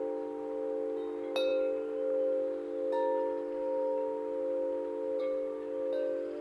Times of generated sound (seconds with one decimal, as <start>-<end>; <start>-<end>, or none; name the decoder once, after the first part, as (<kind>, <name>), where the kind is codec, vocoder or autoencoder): none